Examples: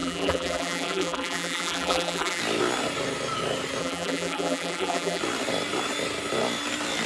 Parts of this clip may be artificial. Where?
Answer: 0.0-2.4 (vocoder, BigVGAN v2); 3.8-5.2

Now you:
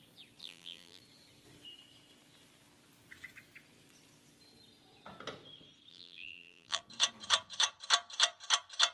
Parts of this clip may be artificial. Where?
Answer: 0.4-1.0 (vocoder, BigVGAN v2); 5.9-6.8

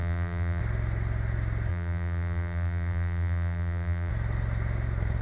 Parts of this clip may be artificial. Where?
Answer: 0.0-0.6 (vocoder, BigVGAN v2); 1.7-4.1